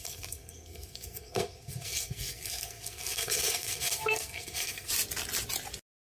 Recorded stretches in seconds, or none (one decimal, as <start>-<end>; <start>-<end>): 4.9-6.0